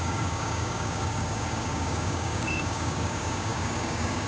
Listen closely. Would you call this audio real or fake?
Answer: fake